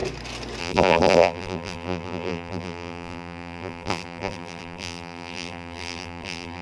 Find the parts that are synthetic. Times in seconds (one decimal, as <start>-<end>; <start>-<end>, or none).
0.6-6.6